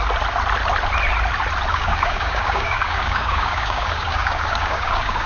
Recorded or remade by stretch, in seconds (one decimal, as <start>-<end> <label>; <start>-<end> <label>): 0.0-1.7 recorded; 1.7-5.3 remade